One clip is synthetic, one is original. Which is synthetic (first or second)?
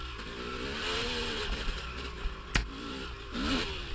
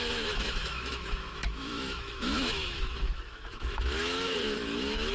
second